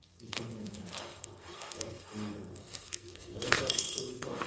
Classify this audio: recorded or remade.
remade